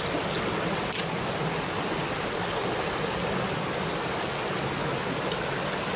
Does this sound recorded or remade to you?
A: recorded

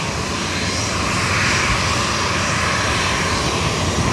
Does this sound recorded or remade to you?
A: recorded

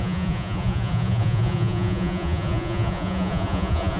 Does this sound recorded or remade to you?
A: remade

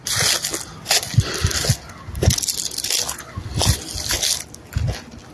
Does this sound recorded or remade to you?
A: recorded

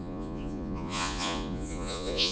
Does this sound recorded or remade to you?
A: remade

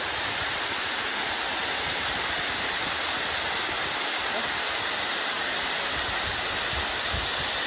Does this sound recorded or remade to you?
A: recorded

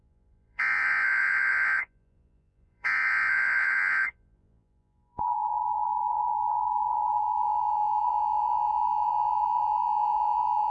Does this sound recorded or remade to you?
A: remade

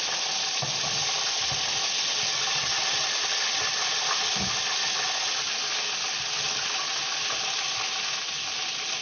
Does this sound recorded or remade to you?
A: recorded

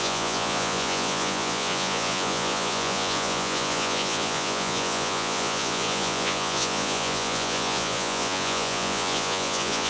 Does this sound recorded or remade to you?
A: remade